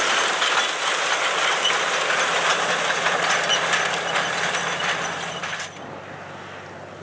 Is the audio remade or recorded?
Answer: recorded